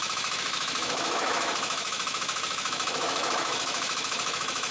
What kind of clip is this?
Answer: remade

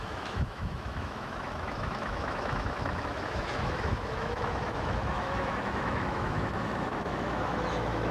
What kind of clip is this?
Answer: remade